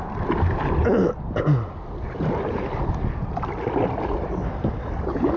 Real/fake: real